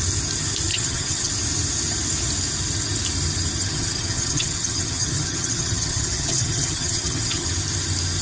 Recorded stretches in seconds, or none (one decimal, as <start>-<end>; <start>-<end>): 0.0-0.7; 1.3-3.6; 7.5-8.2